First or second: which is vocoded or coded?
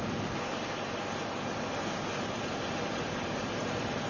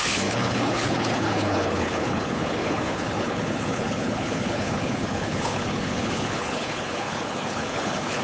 second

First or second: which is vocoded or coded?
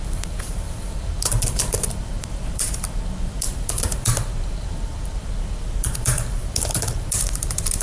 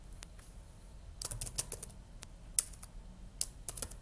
first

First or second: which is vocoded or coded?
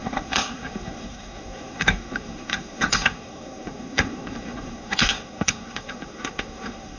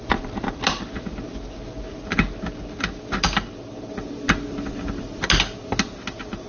first